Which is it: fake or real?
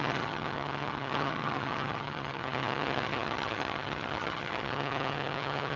fake